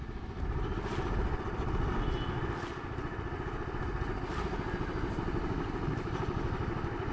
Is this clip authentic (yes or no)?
yes